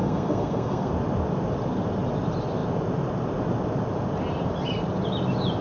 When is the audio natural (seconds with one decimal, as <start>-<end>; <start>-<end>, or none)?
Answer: 0.9-5.6